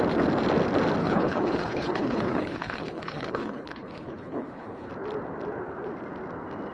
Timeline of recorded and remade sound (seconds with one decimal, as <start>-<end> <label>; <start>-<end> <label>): 0.0-1.0 recorded; 1.0-4.9 remade; 4.9-6.7 recorded